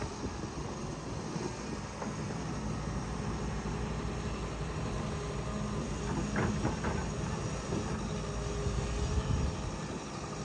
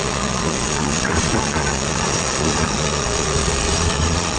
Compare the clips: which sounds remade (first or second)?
second